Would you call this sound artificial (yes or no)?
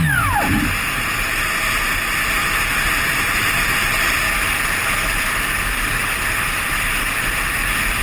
no